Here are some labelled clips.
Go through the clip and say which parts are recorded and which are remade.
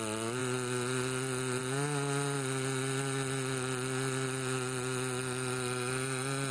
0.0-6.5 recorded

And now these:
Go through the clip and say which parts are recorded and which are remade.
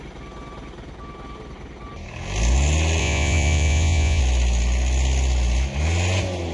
0.0-3.0 recorded; 3.0-4.2 remade; 4.2-6.5 recorded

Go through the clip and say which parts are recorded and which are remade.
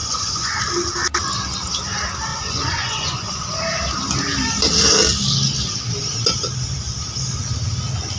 0.0-0.6 remade; 0.6-2.3 recorded; 2.3-3.5 remade; 3.5-8.2 recorded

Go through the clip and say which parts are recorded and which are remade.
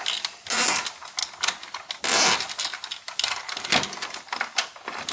0.0-5.1 recorded